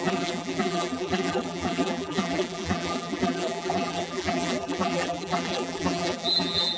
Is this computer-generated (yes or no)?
yes